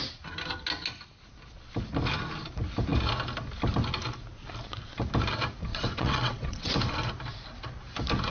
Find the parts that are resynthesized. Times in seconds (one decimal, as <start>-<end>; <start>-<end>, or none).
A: 5.7-6.7